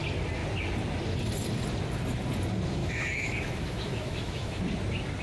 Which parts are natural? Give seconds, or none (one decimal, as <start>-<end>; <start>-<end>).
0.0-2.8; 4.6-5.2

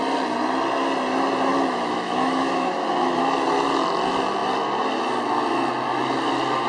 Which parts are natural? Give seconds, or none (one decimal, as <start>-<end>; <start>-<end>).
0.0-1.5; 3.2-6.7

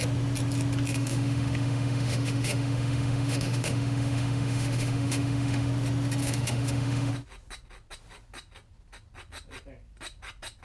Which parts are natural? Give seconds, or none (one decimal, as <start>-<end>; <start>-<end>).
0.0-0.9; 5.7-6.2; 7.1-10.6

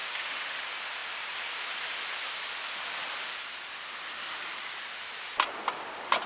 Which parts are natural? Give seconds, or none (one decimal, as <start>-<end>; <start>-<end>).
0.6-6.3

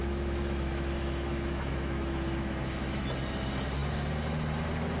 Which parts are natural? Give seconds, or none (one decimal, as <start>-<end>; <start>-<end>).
3.0-5.0

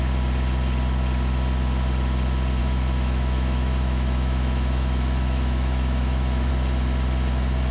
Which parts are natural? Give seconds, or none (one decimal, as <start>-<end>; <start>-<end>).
0.0-2.6; 6.5-7.7

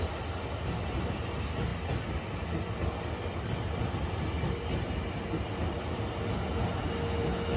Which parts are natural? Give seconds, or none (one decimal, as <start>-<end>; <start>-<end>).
0.0-7.6

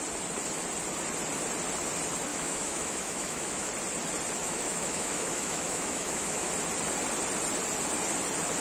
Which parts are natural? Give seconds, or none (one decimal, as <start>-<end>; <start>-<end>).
0.0-2.3; 3.7-4.4; 6.5-8.6